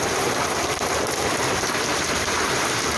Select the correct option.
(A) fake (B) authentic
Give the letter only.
A